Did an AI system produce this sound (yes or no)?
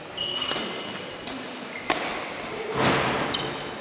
no